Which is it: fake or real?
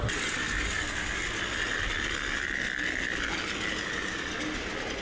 real